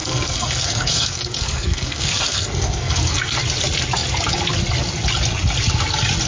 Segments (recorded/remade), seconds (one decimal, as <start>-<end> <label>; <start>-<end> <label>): 0.0-3.4 remade; 3.4-6.3 recorded